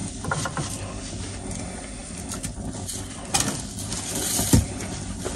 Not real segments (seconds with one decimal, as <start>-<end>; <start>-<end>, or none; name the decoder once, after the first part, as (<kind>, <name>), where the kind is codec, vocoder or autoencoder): none